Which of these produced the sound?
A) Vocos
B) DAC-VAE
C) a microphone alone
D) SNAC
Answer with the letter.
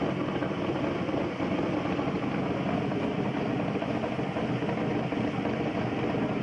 C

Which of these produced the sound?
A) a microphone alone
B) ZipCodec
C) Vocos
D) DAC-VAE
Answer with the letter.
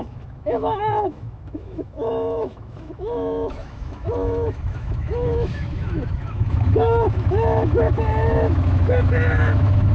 D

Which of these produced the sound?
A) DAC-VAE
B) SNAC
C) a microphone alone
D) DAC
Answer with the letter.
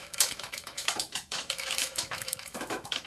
A